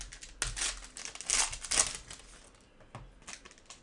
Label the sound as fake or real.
real